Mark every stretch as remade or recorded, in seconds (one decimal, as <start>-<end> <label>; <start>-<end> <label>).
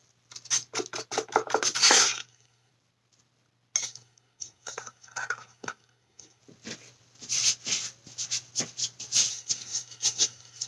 0.0-1.8 recorded; 1.8-2.7 remade; 2.7-3.8 recorded; 3.8-6.4 remade; 6.4-9.3 recorded; 9.3-10.7 remade